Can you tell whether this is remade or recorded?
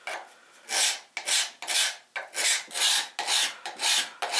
recorded